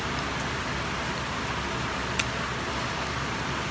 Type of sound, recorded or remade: recorded